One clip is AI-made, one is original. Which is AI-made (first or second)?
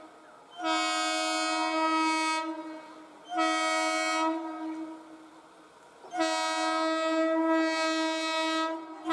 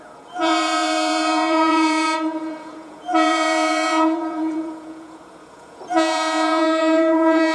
second